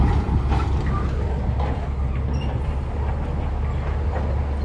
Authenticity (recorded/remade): recorded